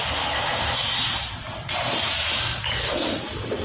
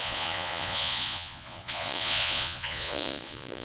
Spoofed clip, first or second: second